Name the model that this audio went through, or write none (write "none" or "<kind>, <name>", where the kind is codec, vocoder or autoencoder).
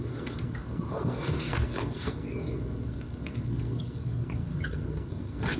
codec, SNAC